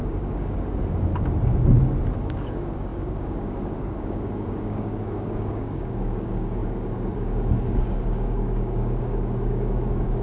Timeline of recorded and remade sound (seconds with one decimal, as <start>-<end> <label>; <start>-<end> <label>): 0.0-1.1 remade; 1.1-2.2 recorded; 2.2-10.2 remade